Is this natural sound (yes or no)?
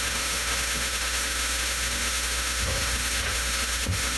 no